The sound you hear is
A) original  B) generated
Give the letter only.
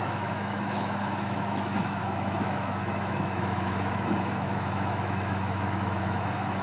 B